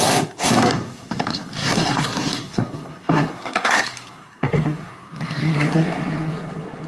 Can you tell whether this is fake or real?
fake